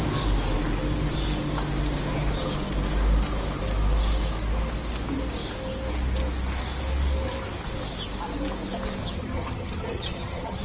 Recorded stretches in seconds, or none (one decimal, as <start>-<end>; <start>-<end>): 0.0-9.0